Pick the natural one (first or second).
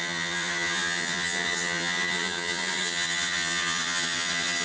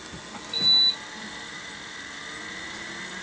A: second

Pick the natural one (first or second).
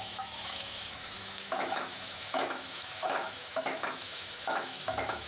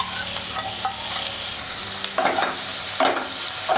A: second